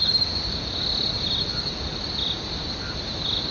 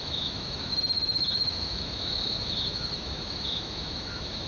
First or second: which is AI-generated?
second